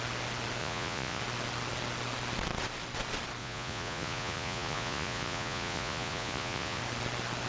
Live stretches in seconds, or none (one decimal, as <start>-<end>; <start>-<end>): 0.0-0.6; 1.2-3.4; 6.8-7.5